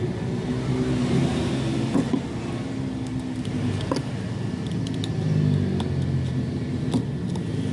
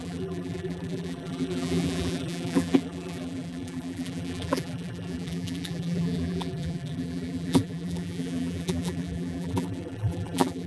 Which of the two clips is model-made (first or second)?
second